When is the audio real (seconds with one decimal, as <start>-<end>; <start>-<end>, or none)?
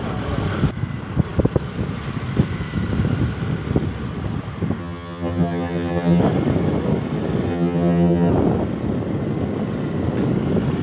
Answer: 0.0-4.8; 6.2-7.5; 8.3-10.8